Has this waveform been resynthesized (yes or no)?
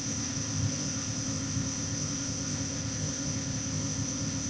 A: yes